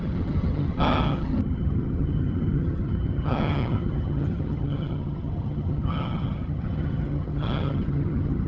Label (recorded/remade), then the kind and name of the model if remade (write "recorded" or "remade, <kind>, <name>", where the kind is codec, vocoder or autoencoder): remade, vocoder, HiFi-GAN